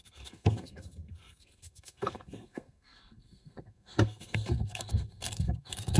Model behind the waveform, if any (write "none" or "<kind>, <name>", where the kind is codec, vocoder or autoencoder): codec, SNAC